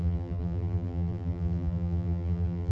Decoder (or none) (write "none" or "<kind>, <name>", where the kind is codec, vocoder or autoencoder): vocoder, BigVGAN v2